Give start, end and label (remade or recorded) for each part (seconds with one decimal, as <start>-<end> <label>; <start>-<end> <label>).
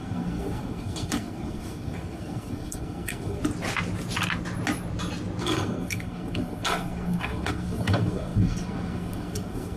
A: 0.0-3.4 remade; 3.4-5.4 recorded; 5.4-9.8 remade